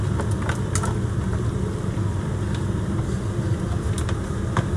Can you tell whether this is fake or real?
real